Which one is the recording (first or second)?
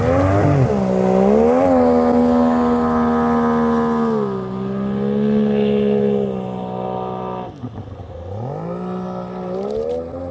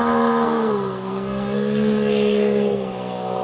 first